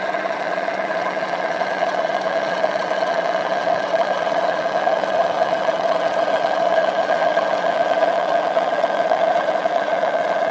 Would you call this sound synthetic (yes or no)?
yes